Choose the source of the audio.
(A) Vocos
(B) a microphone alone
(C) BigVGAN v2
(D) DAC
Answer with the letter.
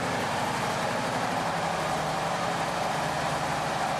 C